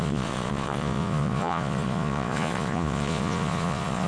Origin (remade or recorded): remade